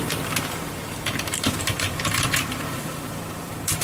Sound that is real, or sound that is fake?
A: fake